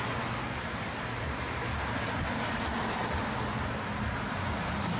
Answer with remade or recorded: recorded